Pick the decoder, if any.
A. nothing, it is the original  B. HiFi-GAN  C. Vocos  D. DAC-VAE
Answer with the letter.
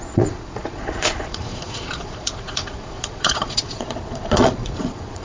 C